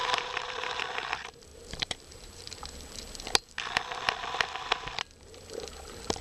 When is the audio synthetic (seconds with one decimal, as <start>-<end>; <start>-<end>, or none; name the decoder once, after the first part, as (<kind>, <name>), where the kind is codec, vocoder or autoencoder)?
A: 0.0-0.5 (vocoder, BigVGAN v2); 1.5-2.6